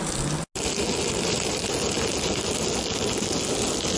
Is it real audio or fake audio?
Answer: real